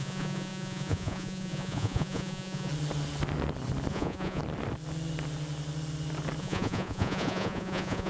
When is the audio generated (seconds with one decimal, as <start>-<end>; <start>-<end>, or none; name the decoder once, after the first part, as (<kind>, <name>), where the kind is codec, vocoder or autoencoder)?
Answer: 0.0-2.7 (vocoder, Vocos); 3.9-4.4; 6.4-8.1